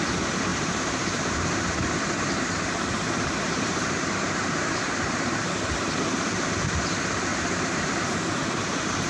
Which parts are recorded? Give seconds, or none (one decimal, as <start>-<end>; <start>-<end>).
0.0-0.5; 5.5-7.3